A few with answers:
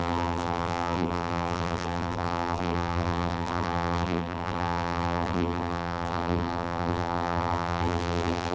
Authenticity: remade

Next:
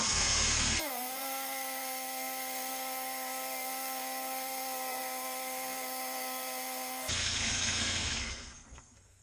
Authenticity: remade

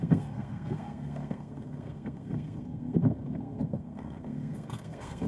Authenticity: remade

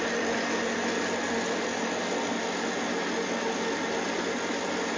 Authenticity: recorded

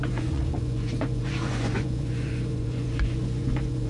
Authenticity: remade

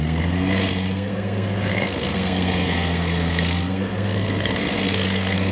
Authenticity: remade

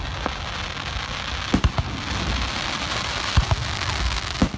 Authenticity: recorded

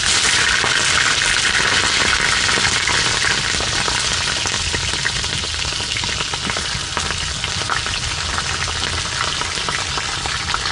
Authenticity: recorded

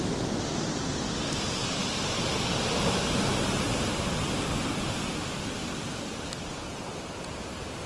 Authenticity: recorded